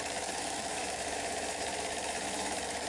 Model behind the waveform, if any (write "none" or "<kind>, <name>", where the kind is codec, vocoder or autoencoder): autoencoder, DAC-VAE